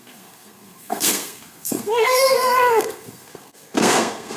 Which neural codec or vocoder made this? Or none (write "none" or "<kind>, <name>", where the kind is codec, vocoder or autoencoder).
codec, SNAC